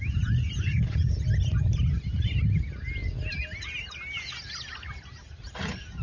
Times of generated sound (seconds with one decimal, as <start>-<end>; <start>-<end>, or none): none